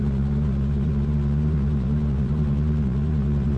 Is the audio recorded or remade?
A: remade